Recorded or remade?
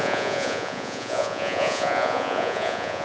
remade